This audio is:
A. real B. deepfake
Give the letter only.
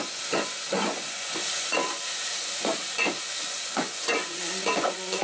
B